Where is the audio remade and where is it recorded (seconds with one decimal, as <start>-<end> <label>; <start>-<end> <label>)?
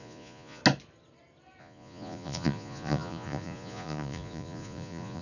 0.0-0.6 remade; 0.6-1.6 recorded; 1.6-5.2 remade